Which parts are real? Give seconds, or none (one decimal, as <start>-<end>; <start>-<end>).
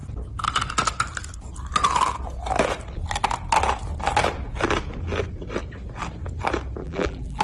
0.0-6.8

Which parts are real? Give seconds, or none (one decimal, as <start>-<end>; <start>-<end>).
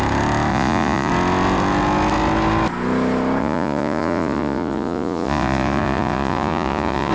0.0-0.5; 1.1-3.4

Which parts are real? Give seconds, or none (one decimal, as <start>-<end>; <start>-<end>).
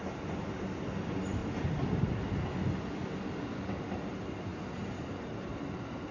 0.0-6.1